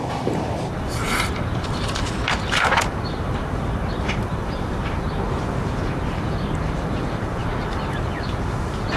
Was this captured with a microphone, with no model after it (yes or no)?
no